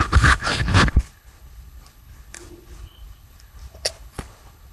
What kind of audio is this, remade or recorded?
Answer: remade